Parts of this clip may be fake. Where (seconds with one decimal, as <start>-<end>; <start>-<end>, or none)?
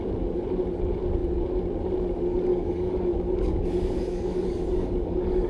2.5-5.5